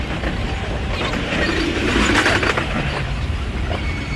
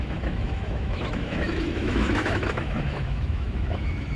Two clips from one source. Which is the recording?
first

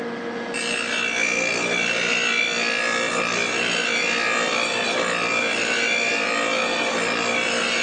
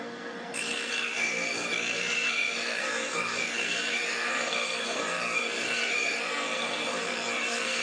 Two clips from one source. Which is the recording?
first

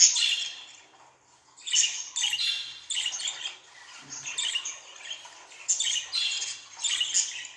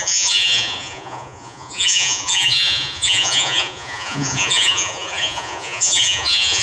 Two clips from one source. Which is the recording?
first